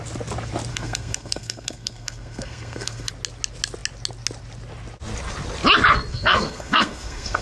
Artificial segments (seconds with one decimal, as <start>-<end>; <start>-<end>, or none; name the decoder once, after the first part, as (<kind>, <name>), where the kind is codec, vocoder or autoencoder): 0.7-3.1 (codec, SNAC); 6.1-7.4